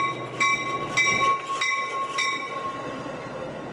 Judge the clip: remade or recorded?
recorded